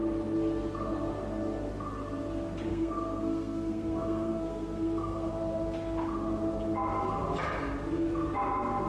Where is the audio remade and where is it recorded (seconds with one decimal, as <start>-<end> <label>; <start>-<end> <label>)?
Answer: 0.0-2.7 recorded; 2.7-5.3 remade; 5.3-8.9 recorded